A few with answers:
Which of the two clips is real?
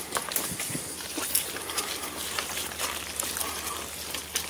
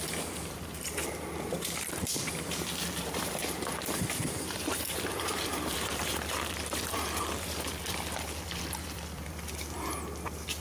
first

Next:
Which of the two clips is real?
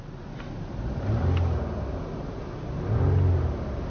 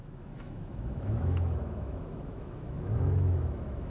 first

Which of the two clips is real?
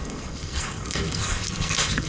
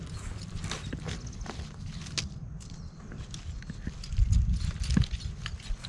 second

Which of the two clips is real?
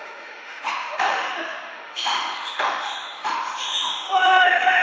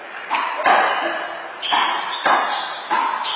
second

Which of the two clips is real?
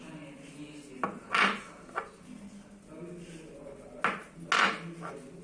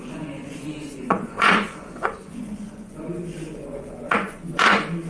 first